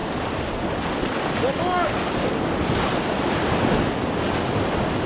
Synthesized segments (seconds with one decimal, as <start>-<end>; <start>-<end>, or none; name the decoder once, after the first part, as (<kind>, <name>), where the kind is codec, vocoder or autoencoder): none